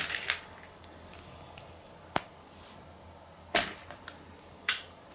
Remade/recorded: recorded